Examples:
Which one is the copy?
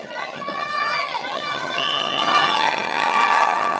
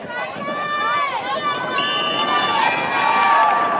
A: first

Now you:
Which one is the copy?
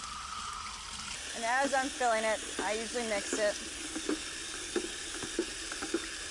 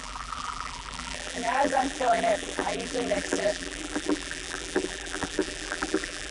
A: second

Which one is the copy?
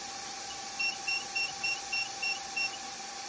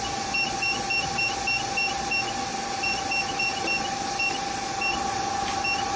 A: first